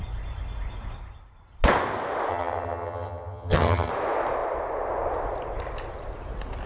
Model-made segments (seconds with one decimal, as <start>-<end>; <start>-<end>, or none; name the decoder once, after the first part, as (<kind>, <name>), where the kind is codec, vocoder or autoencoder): 2.3-3.9 (vocoder, HiFi-GAN)